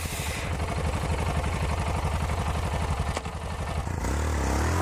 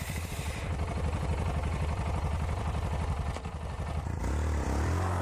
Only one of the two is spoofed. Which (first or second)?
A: second